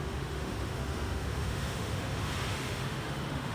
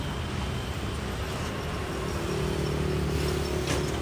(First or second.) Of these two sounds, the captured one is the second